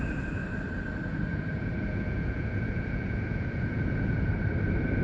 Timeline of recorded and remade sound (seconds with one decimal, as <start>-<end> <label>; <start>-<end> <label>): 0.0-1.3 recorded; 1.3-4.3 remade; 4.3-5.0 recorded